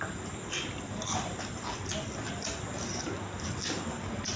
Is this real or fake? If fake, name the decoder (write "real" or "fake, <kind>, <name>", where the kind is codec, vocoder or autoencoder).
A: real